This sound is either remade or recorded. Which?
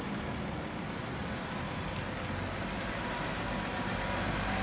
recorded